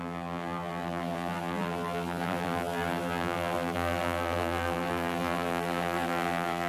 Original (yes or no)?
no